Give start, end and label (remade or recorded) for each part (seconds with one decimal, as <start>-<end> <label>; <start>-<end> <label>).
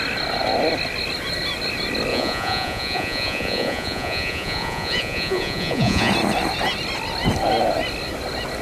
0.0-2.1 recorded; 2.1-6.1 remade; 6.1-8.6 recorded